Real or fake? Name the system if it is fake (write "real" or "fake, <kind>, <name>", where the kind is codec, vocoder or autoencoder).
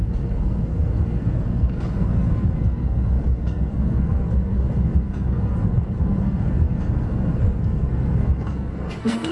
fake, codec, SNAC